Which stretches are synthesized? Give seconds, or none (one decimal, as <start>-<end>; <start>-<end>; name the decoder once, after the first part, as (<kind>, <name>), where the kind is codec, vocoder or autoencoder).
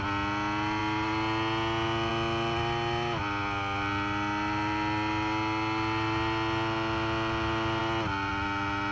none